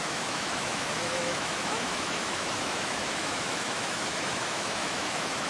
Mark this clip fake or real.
fake